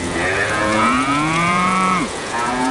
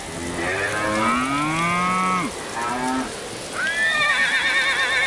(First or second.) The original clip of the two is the second